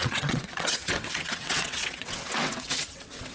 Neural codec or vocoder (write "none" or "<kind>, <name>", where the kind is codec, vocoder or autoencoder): vocoder, WaveNeXt